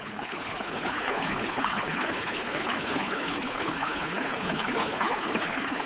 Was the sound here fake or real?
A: fake